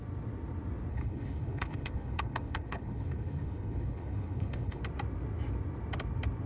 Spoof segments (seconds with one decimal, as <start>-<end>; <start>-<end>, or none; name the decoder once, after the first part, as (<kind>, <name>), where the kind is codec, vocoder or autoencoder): 0.9-4.8 (codec, HILCodec)